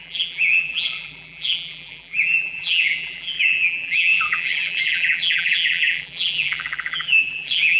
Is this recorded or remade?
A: remade